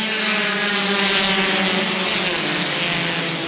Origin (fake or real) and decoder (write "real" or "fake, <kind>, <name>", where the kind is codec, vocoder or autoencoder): real